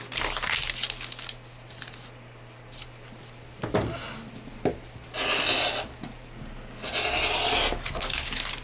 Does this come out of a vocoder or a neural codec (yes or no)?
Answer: no